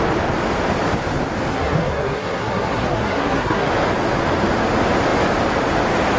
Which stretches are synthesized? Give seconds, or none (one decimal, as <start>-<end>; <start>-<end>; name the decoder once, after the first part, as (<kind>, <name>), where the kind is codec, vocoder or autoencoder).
1.5-3.7 (codec, SNAC)